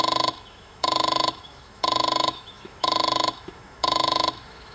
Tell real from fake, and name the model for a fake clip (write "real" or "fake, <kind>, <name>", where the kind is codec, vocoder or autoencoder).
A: fake, autoencoder, DAC-VAE